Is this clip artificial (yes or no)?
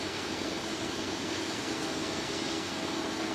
yes